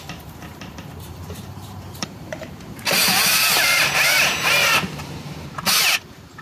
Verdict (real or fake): fake